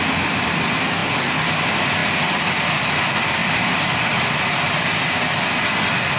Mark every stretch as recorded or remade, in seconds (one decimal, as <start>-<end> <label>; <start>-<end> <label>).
0.0-3.4 recorded; 3.4-4.4 remade; 4.4-6.2 recorded